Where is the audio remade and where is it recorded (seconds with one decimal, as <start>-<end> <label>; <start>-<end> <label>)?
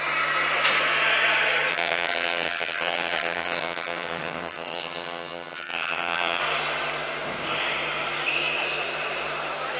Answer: 0.0-1.7 recorded; 1.7-6.4 remade; 6.4-9.8 recorded